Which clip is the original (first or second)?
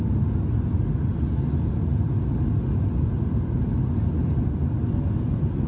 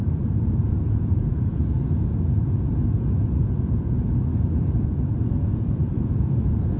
first